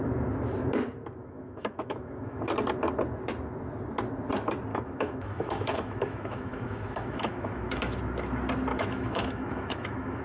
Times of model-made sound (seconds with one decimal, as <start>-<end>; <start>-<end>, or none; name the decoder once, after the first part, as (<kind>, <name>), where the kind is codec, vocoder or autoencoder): 1.2-2.4 (autoencoder, DAC-VAE); 4.7-8.0; 8.7-10.2